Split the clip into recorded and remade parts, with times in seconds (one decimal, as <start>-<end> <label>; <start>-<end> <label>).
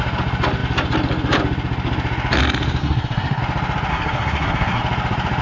0.0-2.8 recorded; 2.8-3.4 remade; 3.4-3.9 recorded; 3.9-4.8 remade; 4.8-5.4 recorded